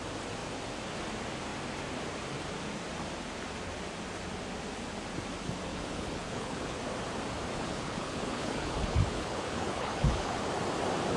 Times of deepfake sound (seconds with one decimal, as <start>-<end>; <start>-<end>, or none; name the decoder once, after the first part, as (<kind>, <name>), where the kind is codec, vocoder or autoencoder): 5.7-6.8 (codec, HILCodec); 7.5-10.4